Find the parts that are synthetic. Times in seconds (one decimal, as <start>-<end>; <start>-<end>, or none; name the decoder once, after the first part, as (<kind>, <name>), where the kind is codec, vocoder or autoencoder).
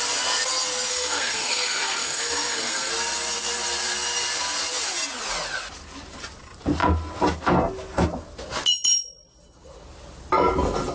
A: 0.9-2.9 (codec, SNAC)